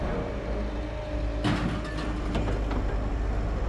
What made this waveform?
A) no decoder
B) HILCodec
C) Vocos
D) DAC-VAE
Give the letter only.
A